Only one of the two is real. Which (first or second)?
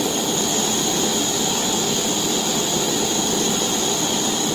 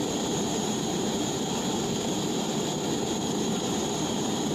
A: first